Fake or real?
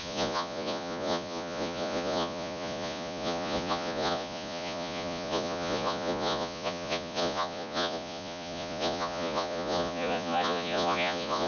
fake